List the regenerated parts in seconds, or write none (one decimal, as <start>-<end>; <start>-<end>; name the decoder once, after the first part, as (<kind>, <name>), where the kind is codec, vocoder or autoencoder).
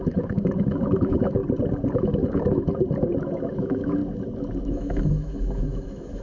0.0-1.4 (autoencoder, DAC-VAE); 2.0-2.7; 3.2-4.0; 4.6-6.2